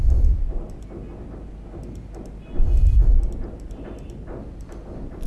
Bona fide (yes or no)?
yes